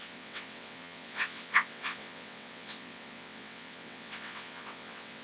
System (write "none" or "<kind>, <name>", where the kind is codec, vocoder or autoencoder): vocoder, WaveNeXt